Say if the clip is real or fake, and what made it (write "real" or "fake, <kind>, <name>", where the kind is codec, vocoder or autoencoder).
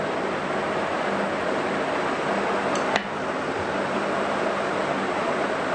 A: real